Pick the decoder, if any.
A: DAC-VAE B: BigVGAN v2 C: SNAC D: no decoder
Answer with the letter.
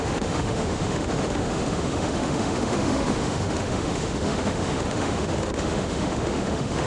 A